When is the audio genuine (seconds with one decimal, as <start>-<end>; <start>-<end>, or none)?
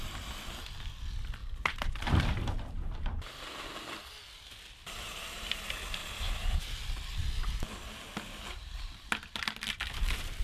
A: 0.0-1.4; 3.7-4.8; 5.6-6.0; 6.6-8.6; 9.4-10.4